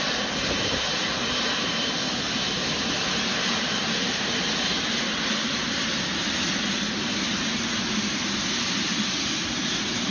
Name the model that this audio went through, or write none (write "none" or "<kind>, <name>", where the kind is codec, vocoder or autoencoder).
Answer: vocoder, BigVGAN v2